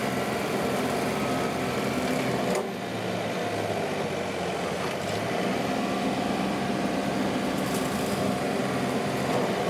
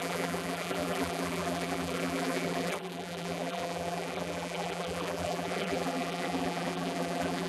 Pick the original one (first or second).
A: first